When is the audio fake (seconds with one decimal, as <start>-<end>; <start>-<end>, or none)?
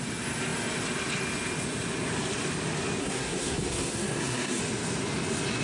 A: 3.0-4.6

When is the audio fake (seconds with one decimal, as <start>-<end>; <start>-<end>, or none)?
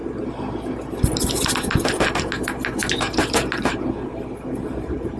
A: none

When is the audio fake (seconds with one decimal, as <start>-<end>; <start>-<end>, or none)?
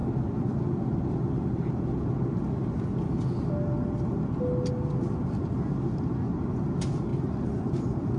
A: 7.1-8.2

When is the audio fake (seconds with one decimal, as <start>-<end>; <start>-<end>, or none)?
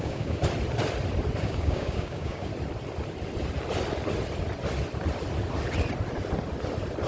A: 0.0-0.4; 1.4-2.5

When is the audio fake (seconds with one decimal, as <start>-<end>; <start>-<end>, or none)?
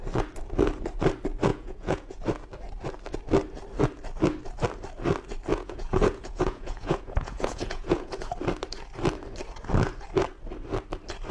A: 1.5-2.2; 5.5-8.3